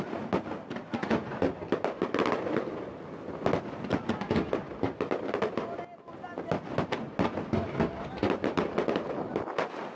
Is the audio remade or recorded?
recorded